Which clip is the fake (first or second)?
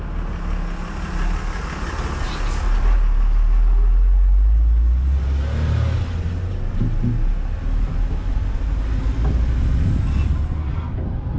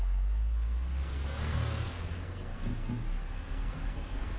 second